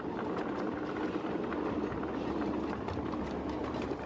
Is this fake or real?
real